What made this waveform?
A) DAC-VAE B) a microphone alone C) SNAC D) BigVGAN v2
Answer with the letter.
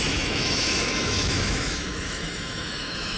A